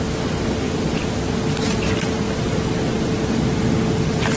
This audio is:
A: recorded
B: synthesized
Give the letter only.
A